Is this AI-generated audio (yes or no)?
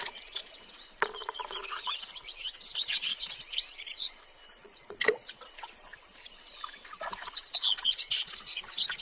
yes